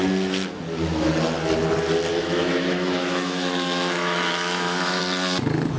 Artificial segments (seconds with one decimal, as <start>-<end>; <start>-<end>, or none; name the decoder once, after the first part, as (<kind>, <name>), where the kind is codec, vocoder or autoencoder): 2.1-5.0 (autoencoder, DAC-VAE)